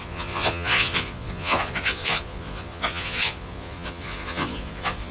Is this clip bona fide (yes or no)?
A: no